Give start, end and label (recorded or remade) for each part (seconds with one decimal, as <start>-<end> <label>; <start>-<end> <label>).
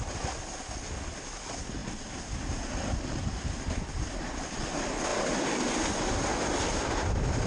0.0-7.5 recorded